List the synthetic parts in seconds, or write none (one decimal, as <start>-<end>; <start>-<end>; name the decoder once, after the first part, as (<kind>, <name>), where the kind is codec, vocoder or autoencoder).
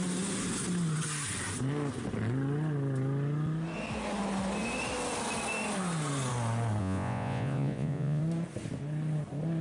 6.8-8.2 (vocoder, Vocos)